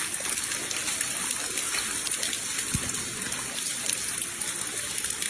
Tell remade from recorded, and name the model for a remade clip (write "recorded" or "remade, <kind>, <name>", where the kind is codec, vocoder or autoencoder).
recorded